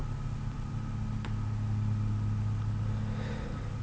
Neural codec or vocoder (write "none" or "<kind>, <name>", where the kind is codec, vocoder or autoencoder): none